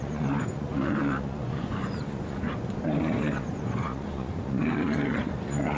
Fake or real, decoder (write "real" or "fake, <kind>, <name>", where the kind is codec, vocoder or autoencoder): fake, vocoder, Vocos